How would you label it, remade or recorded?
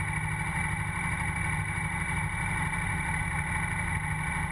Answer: recorded